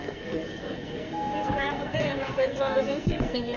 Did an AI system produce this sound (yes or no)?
yes